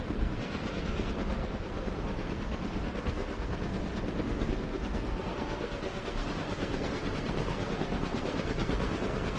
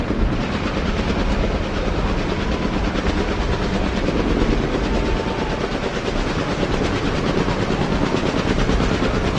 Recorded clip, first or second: second